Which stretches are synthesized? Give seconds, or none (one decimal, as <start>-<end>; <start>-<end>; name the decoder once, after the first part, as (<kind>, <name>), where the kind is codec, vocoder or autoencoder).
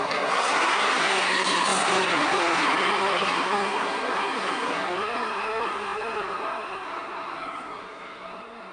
0.0-8.7 (codec, SNAC)